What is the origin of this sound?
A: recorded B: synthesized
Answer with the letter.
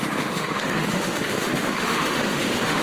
B